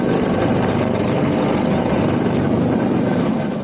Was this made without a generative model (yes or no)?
yes